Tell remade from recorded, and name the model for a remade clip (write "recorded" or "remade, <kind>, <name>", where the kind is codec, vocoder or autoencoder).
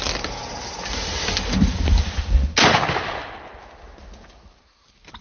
recorded